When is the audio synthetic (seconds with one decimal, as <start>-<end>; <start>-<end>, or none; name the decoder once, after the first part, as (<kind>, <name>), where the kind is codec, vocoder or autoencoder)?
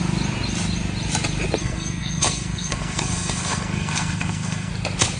1.6-4.7 (codec, SNAC)